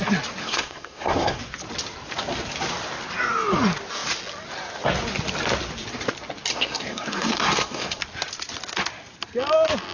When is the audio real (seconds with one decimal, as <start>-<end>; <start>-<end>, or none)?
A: 0.0-0.4; 1.4-6.5; 8.0-9.9